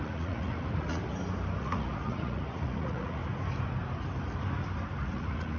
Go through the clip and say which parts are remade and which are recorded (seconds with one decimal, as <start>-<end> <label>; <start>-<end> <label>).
0.0-1.0 remade; 1.0-1.6 recorded; 1.6-3.2 remade; 3.2-5.0 recorded; 5.0-5.6 remade